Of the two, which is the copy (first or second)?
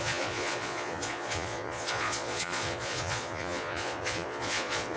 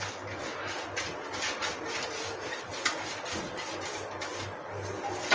first